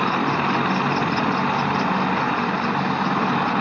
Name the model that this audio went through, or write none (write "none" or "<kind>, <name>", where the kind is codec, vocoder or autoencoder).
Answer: none